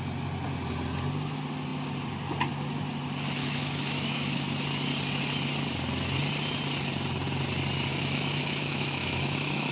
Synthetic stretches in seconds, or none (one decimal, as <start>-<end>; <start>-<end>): 3.4-4.3; 7.9-9.7